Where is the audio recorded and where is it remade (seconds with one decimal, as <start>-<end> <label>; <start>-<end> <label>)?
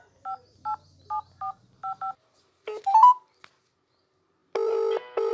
0.0-5.3 recorded